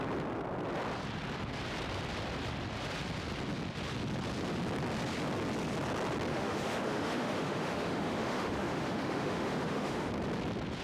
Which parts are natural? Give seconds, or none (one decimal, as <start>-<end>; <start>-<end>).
0.0-6.3; 10.1-10.8